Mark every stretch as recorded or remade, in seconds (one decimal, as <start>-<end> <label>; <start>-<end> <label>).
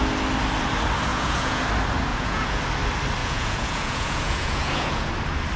0.0-1.1 recorded; 1.1-1.6 remade; 1.6-2.1 recorded; 2.1-2.6 remade; 2.6-3.2 recorded; 3.2-5.1 remade; 5.1-5.6 recorded